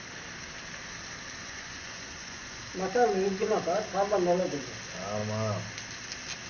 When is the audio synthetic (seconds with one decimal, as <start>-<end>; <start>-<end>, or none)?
1.4-2.6